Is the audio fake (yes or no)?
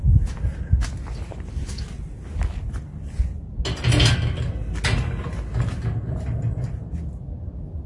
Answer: no